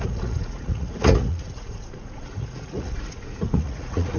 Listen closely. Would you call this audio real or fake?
fake